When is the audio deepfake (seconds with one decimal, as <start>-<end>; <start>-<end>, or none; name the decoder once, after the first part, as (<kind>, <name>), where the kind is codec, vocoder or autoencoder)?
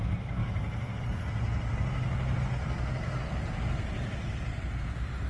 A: none